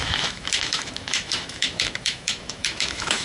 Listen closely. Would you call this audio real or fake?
fake